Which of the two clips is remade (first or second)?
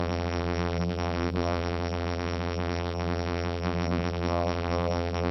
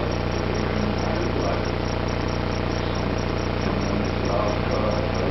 first